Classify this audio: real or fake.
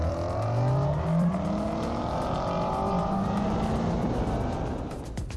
real